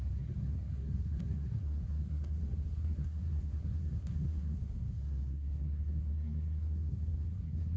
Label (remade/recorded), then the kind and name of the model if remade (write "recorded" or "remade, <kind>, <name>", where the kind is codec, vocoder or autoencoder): remade, codec, SNAC